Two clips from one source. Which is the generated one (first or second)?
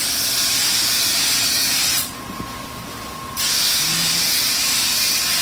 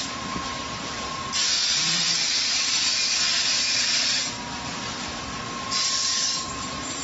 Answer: second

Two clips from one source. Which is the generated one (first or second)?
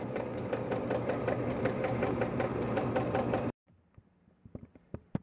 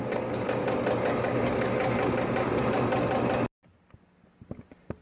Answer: first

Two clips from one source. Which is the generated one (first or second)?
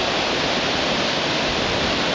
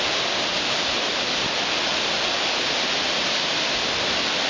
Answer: first